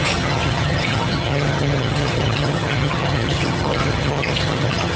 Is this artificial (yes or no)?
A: yes